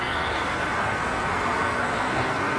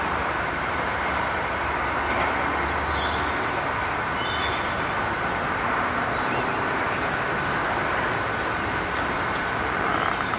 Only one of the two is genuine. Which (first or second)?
second